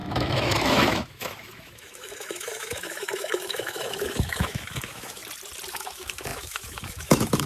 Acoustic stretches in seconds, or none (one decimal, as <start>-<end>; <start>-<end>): 5.2-5.7